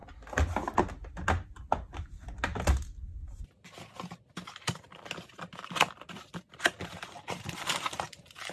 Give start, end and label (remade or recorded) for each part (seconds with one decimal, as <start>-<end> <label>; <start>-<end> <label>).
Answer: 0.0-8.5 recorded